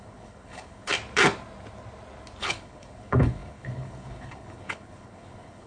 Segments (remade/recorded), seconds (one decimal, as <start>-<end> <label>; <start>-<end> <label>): 0.0-0.9 remade; 0.9-2.4 recorded; 2.4-5.7 remade